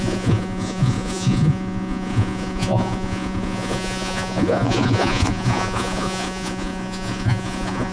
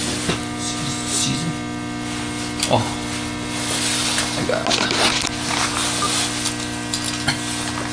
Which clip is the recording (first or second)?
second